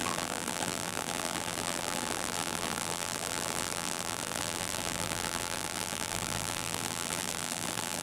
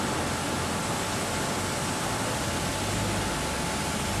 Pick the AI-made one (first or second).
first